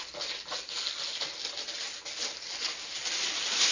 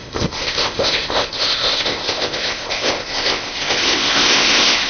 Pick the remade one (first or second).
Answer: second